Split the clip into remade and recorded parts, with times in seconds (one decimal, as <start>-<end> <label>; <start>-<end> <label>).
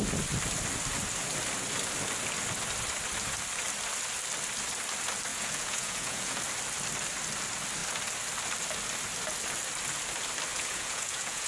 0.0-5.3 recorded; 5.3-6.4 remade; 6.4-10.5 recorded; 10.5-11.5 remade